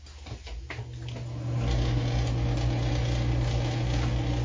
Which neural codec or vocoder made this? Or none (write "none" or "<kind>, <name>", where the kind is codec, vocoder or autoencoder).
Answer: none